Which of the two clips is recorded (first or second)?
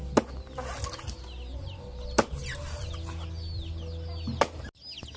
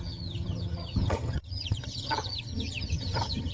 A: first